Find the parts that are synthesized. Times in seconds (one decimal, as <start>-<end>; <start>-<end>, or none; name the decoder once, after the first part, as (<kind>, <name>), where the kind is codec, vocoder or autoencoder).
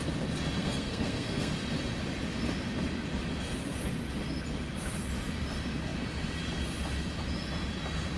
0.6-1.5 (codec, SNAC)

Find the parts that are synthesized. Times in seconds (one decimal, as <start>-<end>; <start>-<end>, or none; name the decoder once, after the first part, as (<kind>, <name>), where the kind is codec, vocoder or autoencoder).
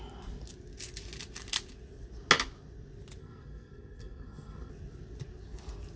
3.2-4.7 (codec, SNAC)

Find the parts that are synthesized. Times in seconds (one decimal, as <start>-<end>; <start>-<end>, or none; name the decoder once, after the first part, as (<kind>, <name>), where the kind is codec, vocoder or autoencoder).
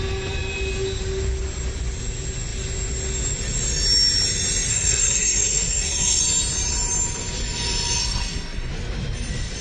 4.7-6.2 (codec, SNAC); 8.0-8.7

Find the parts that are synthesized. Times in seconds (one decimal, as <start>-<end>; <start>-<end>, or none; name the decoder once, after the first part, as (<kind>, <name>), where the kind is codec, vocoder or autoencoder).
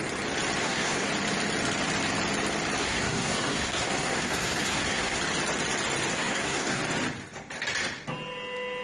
0.6-1.1 (codec, SNAC); 2.8-5.2; 6.1-6.8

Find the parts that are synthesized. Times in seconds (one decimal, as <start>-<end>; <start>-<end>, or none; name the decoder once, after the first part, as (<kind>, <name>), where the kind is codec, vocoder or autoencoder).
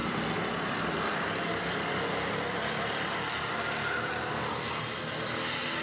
none